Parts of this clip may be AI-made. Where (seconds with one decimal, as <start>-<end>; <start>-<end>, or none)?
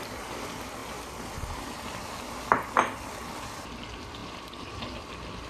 0.0-0.8; 2.2-5.5